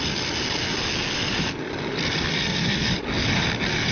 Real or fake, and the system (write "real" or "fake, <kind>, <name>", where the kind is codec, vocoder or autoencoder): real